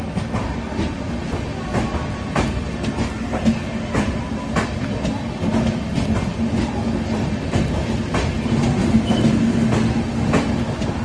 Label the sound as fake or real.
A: real